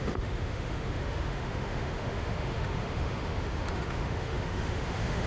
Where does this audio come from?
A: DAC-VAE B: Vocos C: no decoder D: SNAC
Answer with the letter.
A